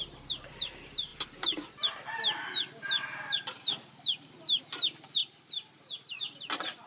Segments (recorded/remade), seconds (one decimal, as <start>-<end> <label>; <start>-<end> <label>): 0.0-5.2 recorded; 5.2-6.2 remade; 6.2-6.9 recorded